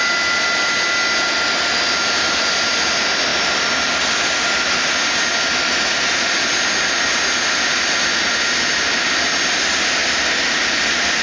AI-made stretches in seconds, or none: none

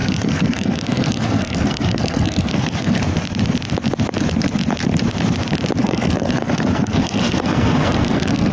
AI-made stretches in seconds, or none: 0.0-3.0 (codec, SNAC); 5.8-8.5

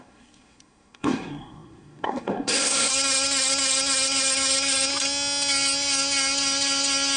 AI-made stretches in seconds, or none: 0.0-2.9 (codec, SNAC)

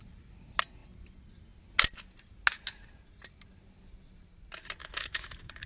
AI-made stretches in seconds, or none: 4.8-5.7 (autoencoder, DAC-VAE)

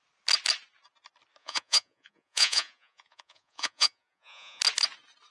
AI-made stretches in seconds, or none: 1.4-4.6 (vocoder, Vocos)

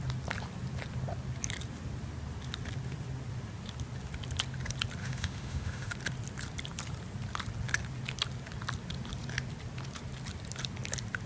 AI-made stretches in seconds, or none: 5.0-5.9 (autoencoder, DAC-VAE)

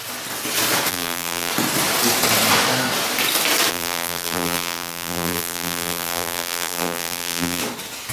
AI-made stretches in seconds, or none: 0.9-1.5 (vocoder, BigVGAN v2); 3.7-7.6

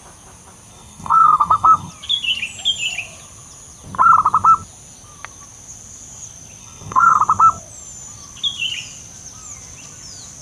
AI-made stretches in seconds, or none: 0.7-1.9 (codec, SNAC); 6.6-7.2